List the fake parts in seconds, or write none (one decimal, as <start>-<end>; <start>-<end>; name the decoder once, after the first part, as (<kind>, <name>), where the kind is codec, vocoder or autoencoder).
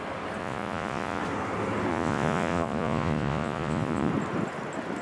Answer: 0.4-1.2 (vocoder, Vocos); 1.9-4.1